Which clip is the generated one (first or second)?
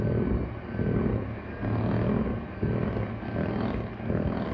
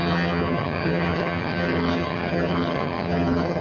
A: second